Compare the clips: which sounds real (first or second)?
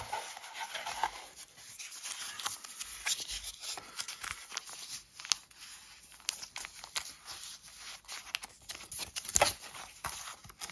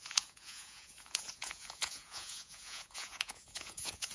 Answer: first